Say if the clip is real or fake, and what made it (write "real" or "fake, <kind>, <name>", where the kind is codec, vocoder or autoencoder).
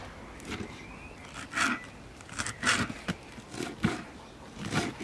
real